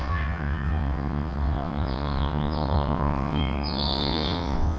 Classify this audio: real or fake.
fake